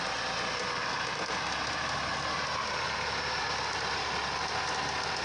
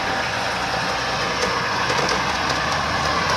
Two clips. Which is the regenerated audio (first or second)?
second